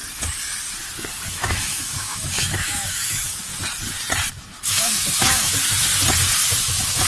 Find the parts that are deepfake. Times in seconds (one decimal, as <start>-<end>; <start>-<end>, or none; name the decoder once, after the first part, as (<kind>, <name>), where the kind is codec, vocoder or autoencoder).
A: 1.3-3.5 (autoencoder, DAC-VAE); 4.3-5.9; 6.6-7.1